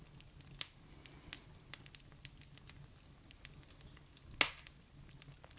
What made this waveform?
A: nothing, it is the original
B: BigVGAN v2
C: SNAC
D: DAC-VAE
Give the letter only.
A